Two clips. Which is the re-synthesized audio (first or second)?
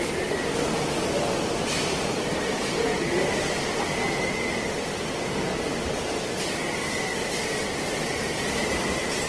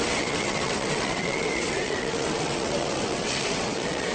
second